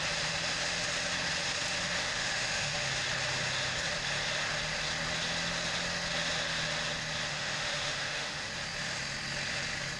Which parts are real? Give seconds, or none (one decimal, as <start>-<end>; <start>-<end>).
0.0-2.0; 2.9-7.3; 8.5-10.0